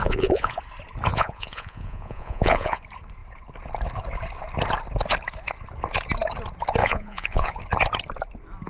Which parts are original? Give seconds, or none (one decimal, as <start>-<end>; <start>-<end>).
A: 0.6-1.1; 2.8-6.8; 7.6-8.7